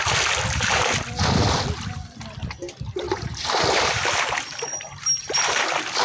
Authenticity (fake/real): real